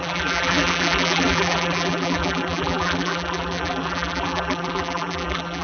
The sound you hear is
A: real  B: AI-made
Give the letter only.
B